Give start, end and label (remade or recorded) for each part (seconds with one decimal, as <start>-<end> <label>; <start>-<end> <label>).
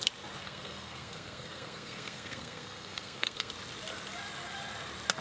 0.0-0.4 recorded; 0.4-3.5 remade; 3.5-5.2 recorded